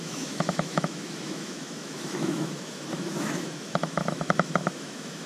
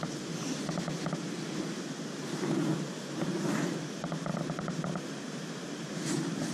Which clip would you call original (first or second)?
second